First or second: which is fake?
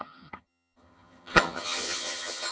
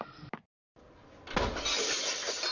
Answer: first